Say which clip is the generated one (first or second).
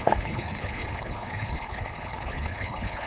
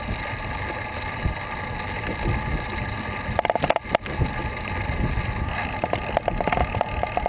first